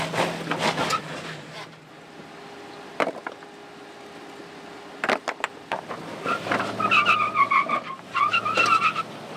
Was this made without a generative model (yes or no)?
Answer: yes